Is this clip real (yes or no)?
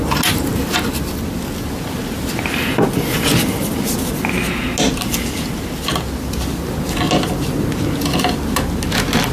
yes